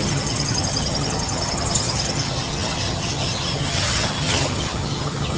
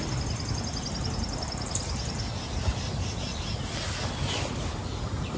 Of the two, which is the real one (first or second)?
second